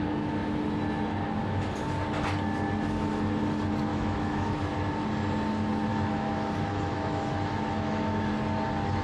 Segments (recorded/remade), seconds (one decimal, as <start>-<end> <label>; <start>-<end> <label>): 0.0-3.9 recorded; 3.9-4.6 remade; 4.6-5.9 recorded; 5.9-8.3 remade; 8.3-9.0 recorded